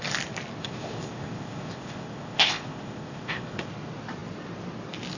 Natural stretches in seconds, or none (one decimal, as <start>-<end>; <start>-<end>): 0.0-0.6; 3.7-5.2